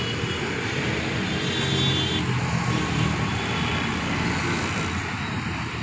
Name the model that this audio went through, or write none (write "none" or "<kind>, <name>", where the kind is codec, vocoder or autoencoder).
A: none